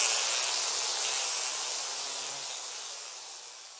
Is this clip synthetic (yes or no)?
no